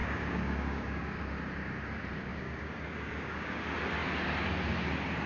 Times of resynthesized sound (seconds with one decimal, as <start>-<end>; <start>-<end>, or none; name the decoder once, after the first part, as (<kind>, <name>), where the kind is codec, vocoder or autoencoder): 0.0-1.2 (codec, DAC); 2.3-3.6